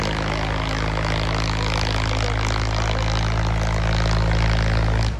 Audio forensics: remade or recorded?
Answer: recorded